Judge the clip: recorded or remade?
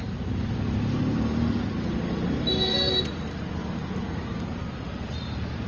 recorded